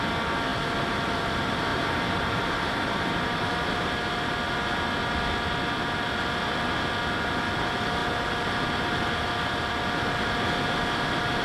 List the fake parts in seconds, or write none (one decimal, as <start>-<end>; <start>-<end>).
1.7-3.5